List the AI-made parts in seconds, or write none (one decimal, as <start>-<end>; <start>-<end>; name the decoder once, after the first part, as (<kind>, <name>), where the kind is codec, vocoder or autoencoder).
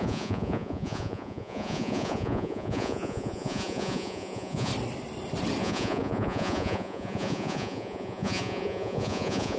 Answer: 0.0-4.7 (vocoder, Vocos); 5.6-9.6